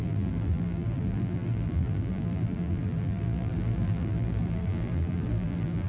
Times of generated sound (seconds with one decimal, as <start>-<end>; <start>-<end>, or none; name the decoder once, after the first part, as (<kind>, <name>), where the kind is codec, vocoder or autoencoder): 0.0-5.9 (vocoder, BigVGAN v2)